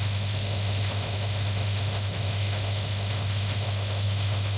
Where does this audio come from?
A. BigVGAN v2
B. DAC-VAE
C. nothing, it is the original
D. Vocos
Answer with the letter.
B